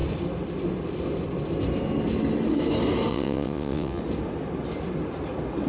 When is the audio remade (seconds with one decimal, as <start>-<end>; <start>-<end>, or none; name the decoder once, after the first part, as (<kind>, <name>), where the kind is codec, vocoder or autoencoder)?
3.1-4.0 (vocoder, WaveNeXt)